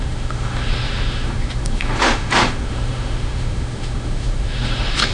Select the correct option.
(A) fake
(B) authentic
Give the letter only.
A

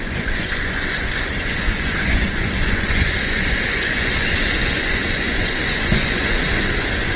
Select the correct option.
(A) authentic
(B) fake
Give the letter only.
B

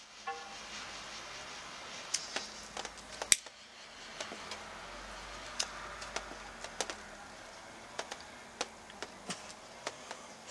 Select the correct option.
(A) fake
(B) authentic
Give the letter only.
B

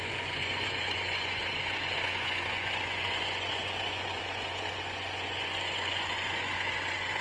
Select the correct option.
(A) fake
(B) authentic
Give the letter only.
A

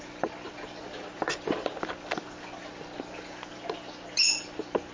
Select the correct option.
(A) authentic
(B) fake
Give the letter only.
A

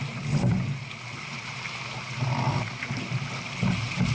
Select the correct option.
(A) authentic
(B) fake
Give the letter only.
A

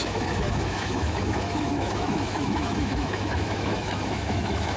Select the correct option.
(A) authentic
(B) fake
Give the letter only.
B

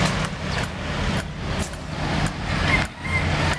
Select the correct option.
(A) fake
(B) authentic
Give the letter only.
B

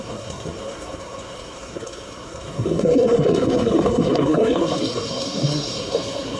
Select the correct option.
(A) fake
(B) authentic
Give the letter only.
A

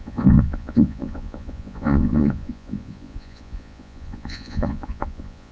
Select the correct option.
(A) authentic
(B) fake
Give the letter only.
B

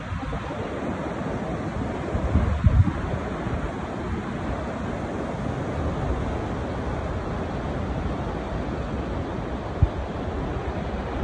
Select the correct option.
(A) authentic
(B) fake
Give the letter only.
A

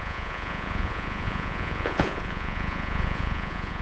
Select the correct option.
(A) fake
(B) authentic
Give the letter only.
A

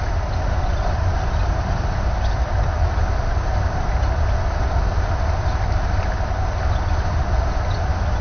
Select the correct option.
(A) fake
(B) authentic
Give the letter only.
B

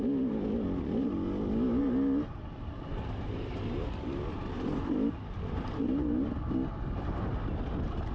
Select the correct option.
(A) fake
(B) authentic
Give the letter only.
B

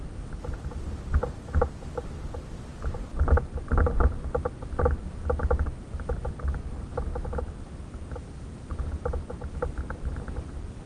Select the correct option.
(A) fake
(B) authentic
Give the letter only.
B